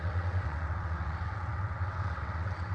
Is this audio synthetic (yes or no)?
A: yes